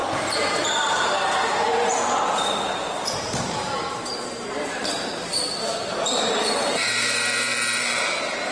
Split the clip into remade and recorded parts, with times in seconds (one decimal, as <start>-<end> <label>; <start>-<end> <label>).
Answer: 0.0-5.1 remade; 5.1-5.6 recorded; 5.6-8.5 remade